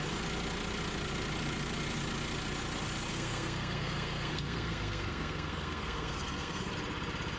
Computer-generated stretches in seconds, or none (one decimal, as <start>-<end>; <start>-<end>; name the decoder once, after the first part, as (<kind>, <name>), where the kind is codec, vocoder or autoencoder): 3.1-6.7 (codec, SNAC)